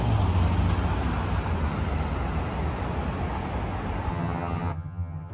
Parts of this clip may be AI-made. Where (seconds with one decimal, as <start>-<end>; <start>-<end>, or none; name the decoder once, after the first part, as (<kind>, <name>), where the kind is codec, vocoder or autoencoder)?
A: 4.1-5.3 (vocoder, HiFi-GAN)